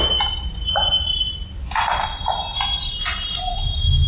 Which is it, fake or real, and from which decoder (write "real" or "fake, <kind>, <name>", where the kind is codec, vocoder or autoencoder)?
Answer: fake, vocoder, BigVGAN v2